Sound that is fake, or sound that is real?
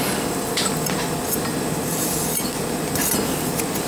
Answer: real